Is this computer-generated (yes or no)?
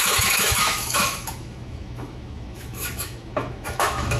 yes